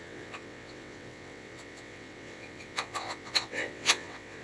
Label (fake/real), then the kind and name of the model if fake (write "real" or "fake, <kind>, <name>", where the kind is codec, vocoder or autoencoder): fake, vocoder, WaveNeXt